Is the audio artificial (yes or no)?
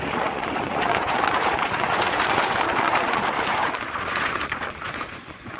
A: yes